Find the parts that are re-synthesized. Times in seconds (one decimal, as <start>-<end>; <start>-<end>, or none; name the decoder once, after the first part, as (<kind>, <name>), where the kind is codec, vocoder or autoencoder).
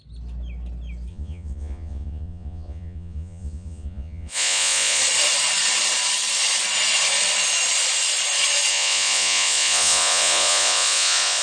1.1-5.0 (vocoder, Vocos); 8.7-11.4